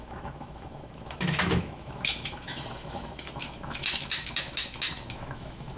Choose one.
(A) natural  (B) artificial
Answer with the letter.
B